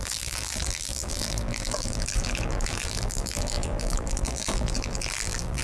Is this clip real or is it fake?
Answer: fake